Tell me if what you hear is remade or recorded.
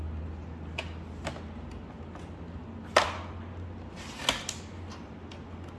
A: recorded